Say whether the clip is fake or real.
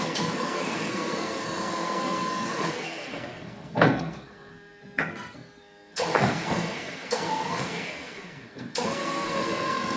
fake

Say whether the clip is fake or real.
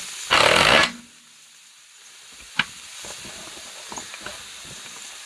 real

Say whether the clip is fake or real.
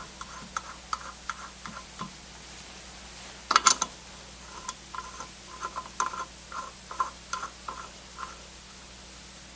real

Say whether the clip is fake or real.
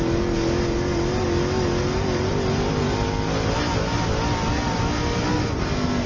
real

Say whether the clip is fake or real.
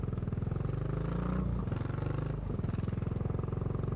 real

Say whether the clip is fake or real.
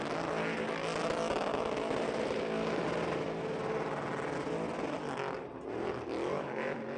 real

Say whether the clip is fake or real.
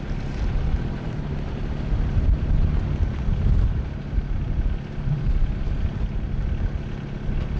real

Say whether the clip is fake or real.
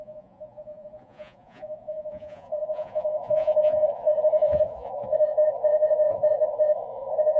fake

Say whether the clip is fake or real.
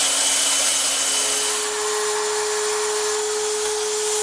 real